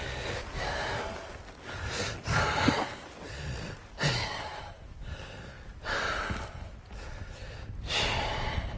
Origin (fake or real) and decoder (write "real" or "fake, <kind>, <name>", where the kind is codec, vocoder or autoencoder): real